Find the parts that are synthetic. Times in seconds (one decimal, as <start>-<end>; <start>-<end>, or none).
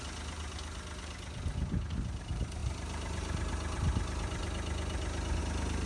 none